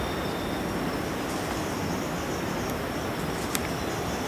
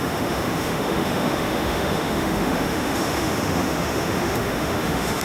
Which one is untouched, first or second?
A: first